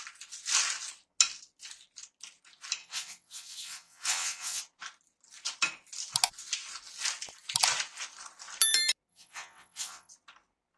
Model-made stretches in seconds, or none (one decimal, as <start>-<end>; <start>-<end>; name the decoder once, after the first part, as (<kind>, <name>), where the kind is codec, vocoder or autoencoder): 2.8-4.6 (vocoder, WaveNeXt); 9.1-10.1